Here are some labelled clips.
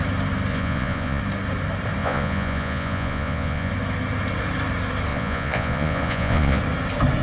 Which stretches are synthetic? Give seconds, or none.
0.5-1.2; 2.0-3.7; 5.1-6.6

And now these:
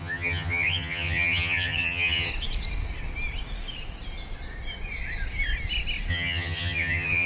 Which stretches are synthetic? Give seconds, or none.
0.0-2.3; 6.1-7.3

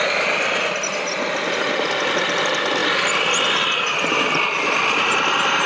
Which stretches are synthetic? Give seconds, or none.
none

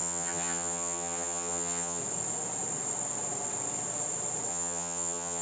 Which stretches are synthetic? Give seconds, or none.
0.0-2.0; 4.5-5.4

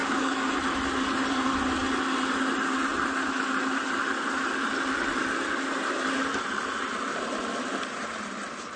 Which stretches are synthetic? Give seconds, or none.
0.0-0.5

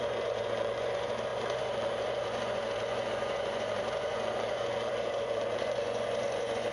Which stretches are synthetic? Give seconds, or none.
0.0-6.7

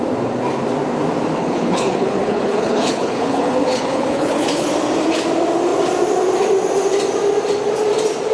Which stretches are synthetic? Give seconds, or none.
1.4-4.7